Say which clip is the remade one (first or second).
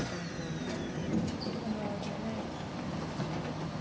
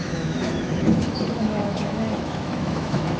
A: second